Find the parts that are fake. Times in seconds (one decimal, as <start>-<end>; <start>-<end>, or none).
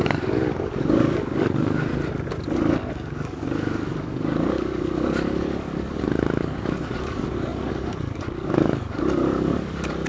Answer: 0.0-1.9; 2.9-10.1